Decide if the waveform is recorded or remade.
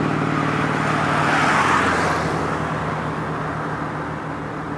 recorded